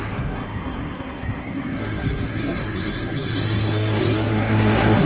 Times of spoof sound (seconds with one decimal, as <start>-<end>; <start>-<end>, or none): 0.0-5.1